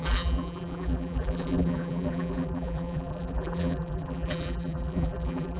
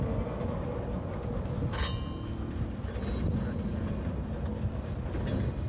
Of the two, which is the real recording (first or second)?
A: second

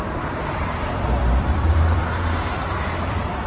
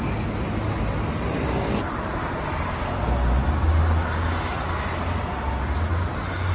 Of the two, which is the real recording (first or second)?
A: second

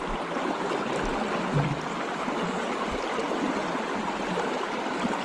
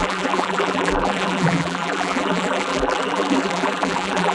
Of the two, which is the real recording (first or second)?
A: first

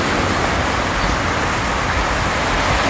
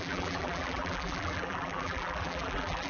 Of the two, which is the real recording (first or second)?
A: first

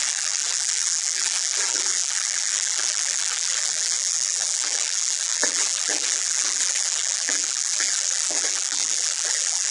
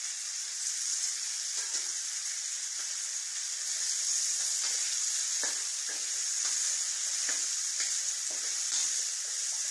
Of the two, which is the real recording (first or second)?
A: second